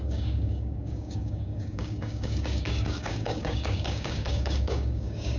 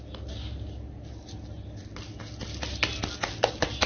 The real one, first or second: second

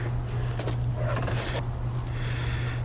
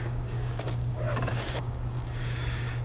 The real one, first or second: first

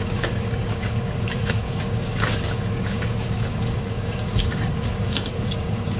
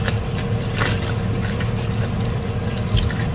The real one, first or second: second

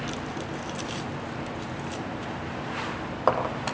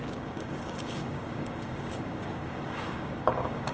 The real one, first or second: first